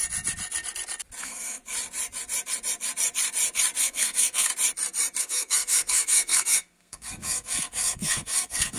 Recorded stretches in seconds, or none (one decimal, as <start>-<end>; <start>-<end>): 0.0-1.2; 1.6-3.8; 4.5-5.2